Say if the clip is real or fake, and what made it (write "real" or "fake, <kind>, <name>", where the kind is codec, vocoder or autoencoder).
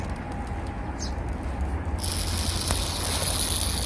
real